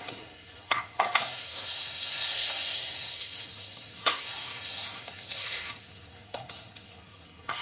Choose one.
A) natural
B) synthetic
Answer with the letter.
B